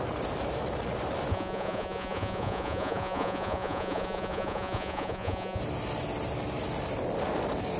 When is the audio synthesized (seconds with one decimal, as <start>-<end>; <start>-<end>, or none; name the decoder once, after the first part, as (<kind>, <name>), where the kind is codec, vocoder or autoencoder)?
1.3-5.6 (vocoder, Vocos)